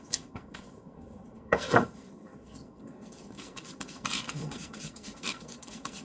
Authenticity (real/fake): fake